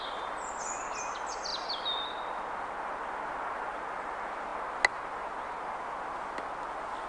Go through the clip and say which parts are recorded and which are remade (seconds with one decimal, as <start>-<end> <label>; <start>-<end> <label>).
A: 0.0-7.1 recorded